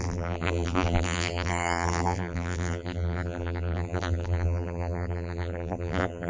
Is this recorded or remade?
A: remade